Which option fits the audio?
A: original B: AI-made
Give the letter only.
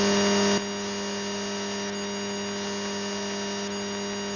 A